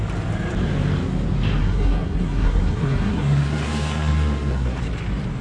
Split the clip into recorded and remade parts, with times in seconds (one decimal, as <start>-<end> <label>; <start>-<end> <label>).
0.0-1.6 recorded; 1.6-4.8 remade; 4.8-5.4 recorded

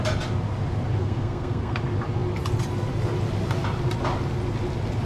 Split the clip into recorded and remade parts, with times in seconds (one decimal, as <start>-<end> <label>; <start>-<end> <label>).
0.0-1.0 recorded; 1.0-1.8 remade; 1.8-5.0 recorded

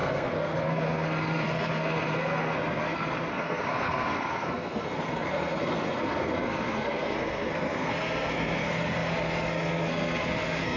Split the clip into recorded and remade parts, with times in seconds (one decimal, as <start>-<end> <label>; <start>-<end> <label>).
0.0-10.8 remade